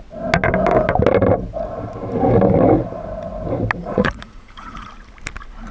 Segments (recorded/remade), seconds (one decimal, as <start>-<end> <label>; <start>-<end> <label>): 0.0-3.8 recorded; 3.8-4.9 remade; 4.9-5.7 recorded

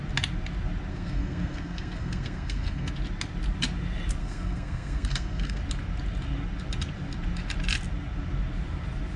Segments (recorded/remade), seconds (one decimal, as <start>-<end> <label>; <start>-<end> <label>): 0.0-0.9 recorded; 0.9-2.9 remade; 2.9-4.2 recorded; 4.2-5.6 remade; 5.6-9.2 recorded

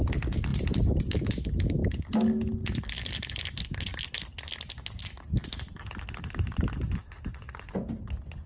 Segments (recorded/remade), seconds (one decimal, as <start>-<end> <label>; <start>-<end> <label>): 0.0-8.5 recorded

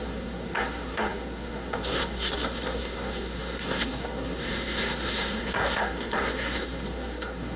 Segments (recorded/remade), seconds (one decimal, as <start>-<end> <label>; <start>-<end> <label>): 0.0-7.6 remade

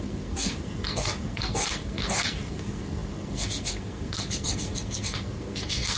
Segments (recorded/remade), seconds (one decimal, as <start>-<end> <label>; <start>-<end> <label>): 0.0-6.0 remade